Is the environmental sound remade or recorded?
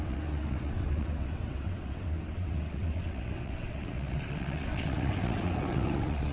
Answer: remade